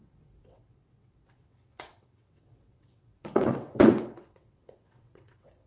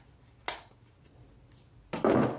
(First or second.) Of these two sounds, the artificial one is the first